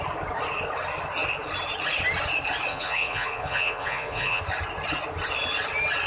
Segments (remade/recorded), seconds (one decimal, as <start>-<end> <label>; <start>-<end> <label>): 0.0-2.7 recorded; 2.7-4.4 remade; 4.4-6.1 recorded